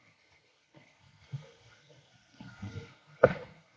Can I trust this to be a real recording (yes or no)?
no